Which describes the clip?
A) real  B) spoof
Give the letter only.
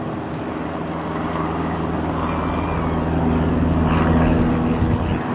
A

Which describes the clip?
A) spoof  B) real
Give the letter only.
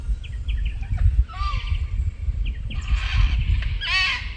B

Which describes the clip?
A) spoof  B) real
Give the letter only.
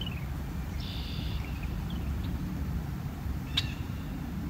B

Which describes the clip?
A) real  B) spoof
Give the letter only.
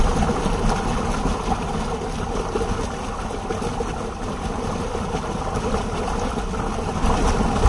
A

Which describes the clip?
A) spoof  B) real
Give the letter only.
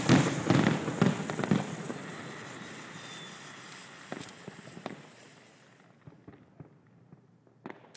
B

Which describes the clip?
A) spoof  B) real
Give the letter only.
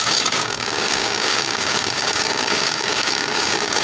A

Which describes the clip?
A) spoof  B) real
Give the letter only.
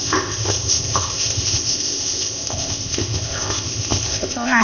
A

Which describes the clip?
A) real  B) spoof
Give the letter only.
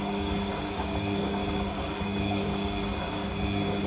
B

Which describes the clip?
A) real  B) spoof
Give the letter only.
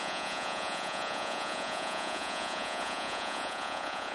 B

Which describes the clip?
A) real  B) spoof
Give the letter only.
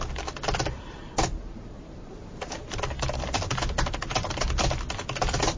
A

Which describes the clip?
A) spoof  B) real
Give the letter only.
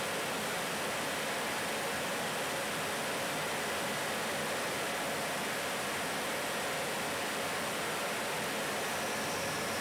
B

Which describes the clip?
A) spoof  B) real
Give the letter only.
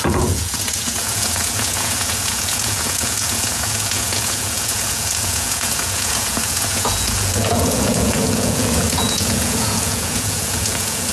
A